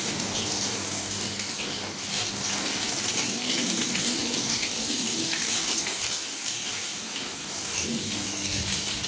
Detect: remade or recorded remade